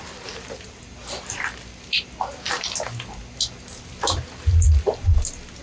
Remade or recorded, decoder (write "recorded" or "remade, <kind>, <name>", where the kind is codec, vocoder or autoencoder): recorded